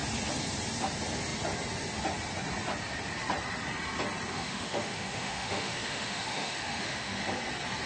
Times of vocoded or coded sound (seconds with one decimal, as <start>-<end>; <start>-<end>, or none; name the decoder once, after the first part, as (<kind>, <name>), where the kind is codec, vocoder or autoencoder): 4.3-7.2 (autoencoder, DAC-VAE)